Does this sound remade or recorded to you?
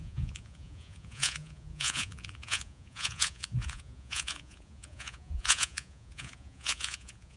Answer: remade